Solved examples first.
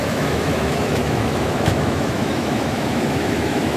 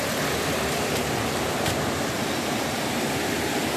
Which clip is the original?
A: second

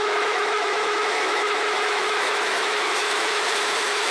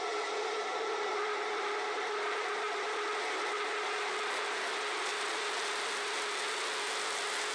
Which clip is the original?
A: second